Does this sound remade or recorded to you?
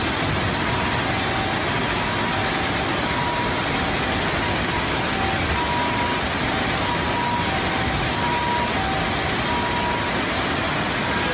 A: recorded